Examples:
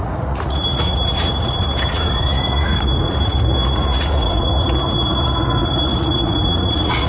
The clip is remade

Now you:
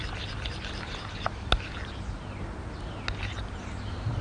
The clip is recorded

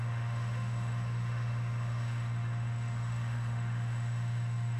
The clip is remade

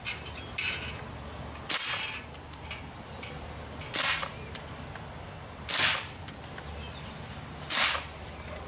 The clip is recorded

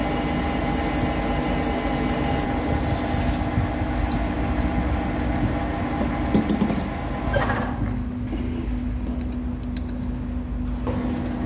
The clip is recorded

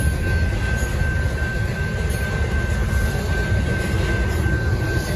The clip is recorded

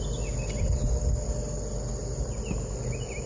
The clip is recorded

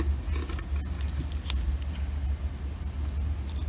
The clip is recorded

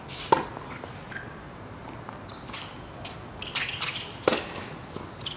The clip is recorded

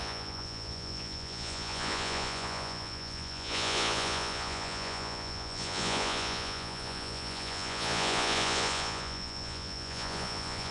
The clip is remade